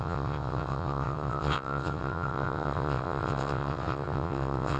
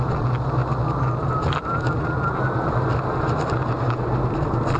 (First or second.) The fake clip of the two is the first